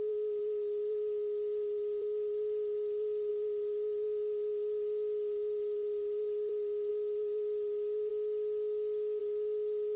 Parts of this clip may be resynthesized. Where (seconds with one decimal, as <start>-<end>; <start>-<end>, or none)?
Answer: 0.0-8.1; 9.2-10.0